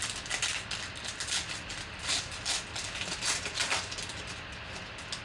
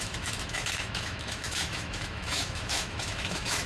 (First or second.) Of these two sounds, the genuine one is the first